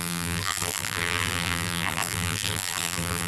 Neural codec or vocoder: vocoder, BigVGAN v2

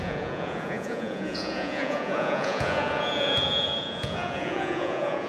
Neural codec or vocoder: vocoder, Vocos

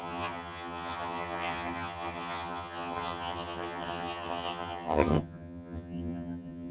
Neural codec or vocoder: vocoder, HiFi-GAN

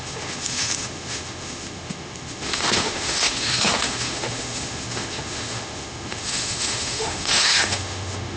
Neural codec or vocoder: autoencoder, DAC-VAE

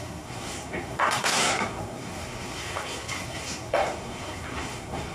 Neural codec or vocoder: codec, SNAC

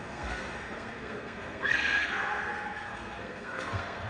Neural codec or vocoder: codec, SNAC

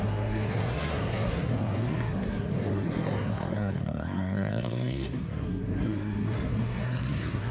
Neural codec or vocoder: codec, SNAC